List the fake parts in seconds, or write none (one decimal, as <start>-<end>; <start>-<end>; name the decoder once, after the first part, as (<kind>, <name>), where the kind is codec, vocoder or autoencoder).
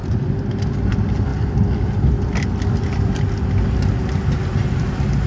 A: none